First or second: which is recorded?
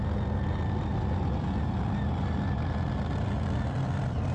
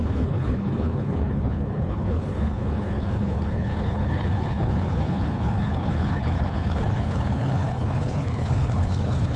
first